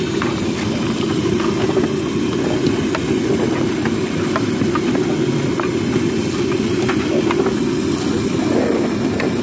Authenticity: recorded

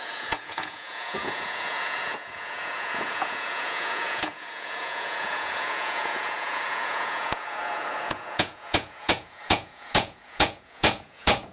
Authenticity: remade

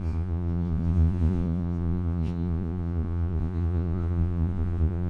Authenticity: remade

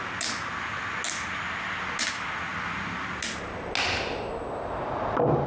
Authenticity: recorded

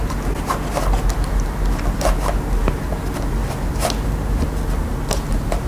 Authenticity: recorded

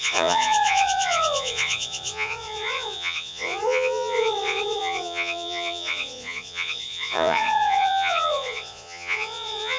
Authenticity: remade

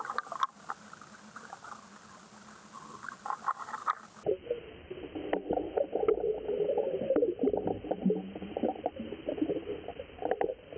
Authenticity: recorded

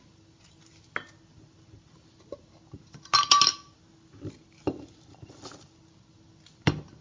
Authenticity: recorded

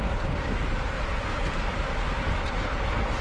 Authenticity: recorded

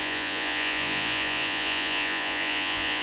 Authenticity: remade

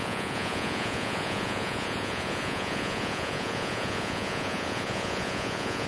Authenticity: remade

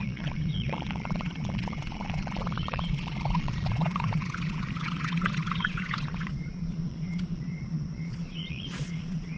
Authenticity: remade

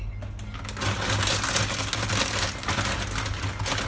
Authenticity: recorded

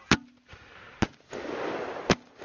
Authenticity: recorded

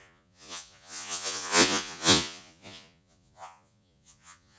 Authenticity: remade